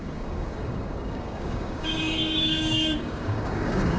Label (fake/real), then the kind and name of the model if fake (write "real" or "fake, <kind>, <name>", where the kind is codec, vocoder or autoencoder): fake, codec, DAC